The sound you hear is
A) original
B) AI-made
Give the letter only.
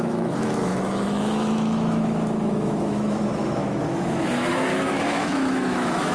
B